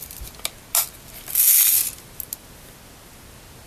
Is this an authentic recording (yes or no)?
yes